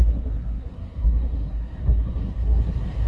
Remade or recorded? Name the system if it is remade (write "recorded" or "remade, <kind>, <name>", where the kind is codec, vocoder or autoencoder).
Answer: remade, codec, SNAC